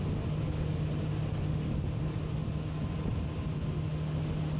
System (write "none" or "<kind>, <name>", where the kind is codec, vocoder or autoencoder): none